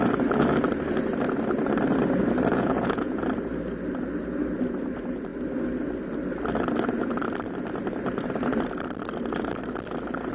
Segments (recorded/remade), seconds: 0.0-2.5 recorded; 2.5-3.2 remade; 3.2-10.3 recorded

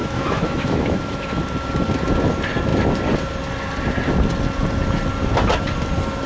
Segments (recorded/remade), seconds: 0.0-1.4 remade; 1.4-6.3 recorded

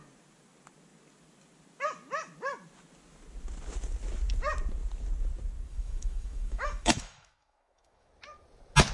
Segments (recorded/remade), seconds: 0.0-5.7 recorded; 5.7-8.1 remade; 8.1-8.9 recorded